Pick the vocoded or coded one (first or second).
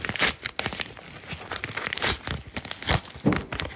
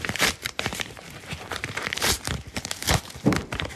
second